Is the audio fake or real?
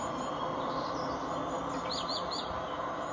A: real